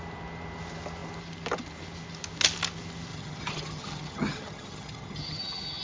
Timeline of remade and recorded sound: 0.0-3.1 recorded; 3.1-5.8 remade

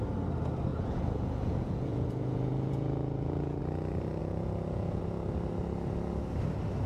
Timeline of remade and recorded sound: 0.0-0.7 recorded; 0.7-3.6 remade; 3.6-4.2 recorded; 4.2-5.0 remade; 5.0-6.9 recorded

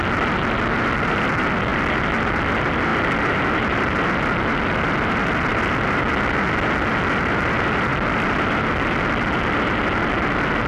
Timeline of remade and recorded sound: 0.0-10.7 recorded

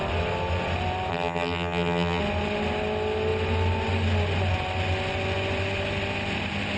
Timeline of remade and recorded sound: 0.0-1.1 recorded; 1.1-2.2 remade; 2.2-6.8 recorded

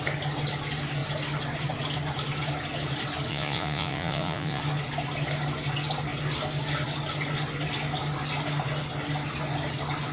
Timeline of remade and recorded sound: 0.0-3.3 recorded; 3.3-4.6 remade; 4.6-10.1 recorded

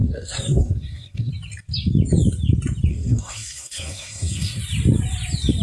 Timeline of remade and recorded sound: 0.0-1.3 remade; 1.3-2.9 recorded; 2.9-4.6 remade; 4.6-5.6 recorded

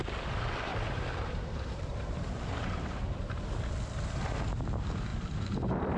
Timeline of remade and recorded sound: 0.0-0.7 recorded; 0.7-3.7 remade; 3.7-6.0 recorded

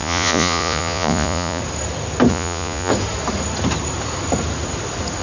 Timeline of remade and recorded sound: 0.0-1.6 remade; 1.6-2.3 recorded; 2.3-2.9 remade; 2.9-5.2 recorded